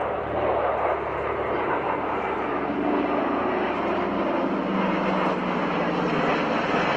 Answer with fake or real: real